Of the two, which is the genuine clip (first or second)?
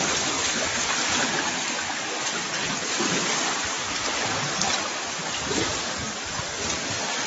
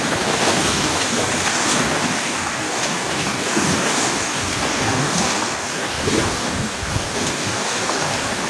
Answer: first